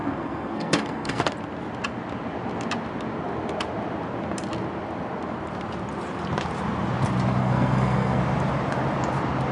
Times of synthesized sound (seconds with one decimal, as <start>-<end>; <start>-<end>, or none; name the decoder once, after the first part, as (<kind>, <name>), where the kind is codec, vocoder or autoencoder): 0.0-1.2 (codec, SNAC); 7.4-8.2